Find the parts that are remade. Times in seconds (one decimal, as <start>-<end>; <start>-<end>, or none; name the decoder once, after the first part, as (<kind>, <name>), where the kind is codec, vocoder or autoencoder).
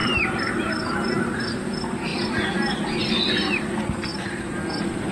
0.0-0.5 (vocoder, BigVGAN v2); 2.1-2.9; 4.1-5.1